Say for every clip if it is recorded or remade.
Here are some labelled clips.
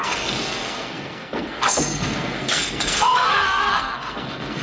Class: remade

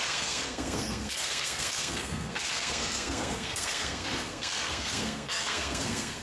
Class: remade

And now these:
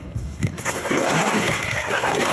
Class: remade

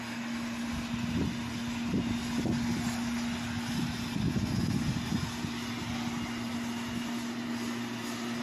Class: recorded